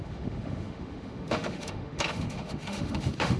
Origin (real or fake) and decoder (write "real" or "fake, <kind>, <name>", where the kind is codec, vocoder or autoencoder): fake, autoencoder, DAC-VAE